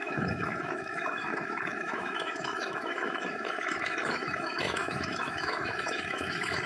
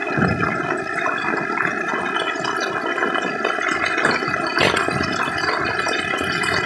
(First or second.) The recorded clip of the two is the second